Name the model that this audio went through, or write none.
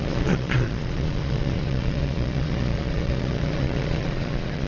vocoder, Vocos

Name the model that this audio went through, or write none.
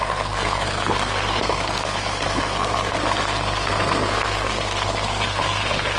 codec, SNAC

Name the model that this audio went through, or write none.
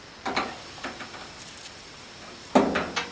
none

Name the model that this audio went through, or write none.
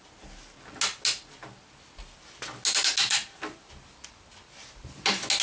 none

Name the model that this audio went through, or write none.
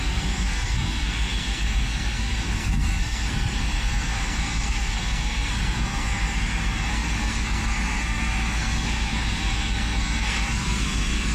codec, SNAC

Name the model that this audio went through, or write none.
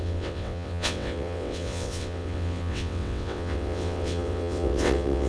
vocoder, WaveNeXt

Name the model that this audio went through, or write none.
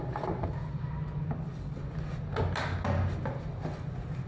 none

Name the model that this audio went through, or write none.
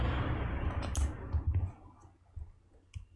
none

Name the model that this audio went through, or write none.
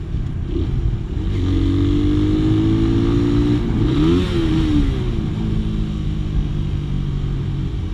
none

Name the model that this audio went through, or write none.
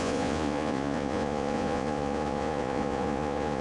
vocoder, Vocos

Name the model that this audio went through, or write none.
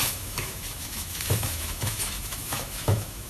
autoencoder, DAC-VAE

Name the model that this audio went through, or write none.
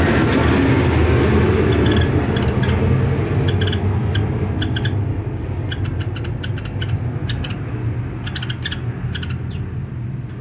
none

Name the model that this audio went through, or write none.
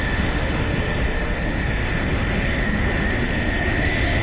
autoencoder, DAC-VAE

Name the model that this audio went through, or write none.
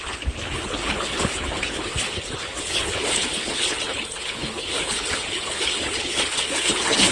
codec, HILCodec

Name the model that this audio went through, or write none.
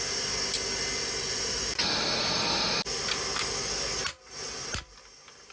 none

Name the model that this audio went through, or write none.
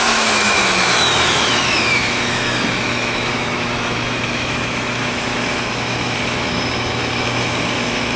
autoencoder, DAC-VAE